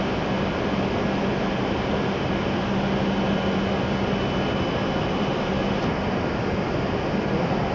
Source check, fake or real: real